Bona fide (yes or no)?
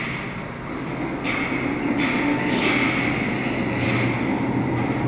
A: yes